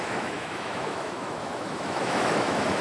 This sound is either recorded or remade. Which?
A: remade